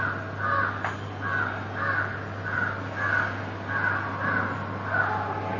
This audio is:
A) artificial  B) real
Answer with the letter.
B